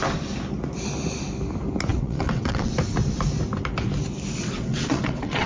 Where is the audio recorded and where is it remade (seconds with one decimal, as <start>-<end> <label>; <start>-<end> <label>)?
0.0-1.9 recorded; 1.9-2.7 remade; 2.7-4.4 recorded; 4.4-5.5 remade